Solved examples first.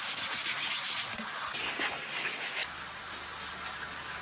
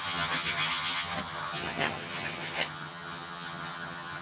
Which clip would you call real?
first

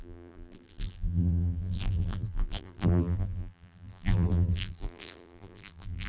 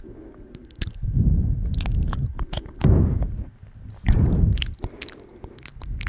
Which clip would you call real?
second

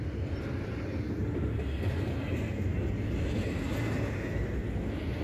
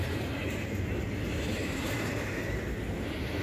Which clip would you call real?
first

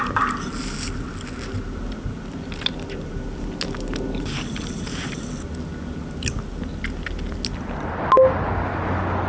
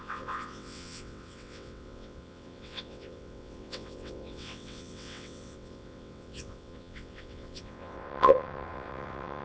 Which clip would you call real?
first